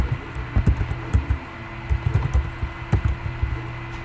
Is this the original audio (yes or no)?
yes